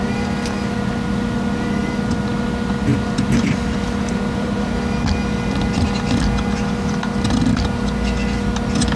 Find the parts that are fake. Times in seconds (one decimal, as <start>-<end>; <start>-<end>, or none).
none